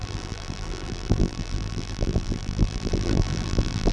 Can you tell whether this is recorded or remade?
remade